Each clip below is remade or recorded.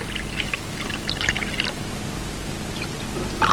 recorded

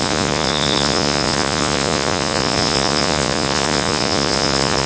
remade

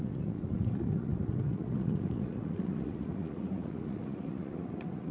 remade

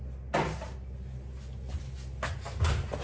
recorded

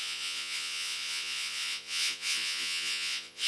remade